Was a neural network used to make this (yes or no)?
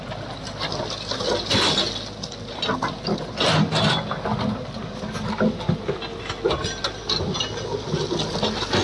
no